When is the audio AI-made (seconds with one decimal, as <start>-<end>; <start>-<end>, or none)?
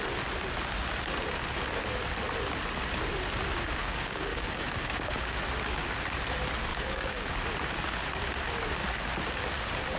3.8-5.4; 6.7-7.3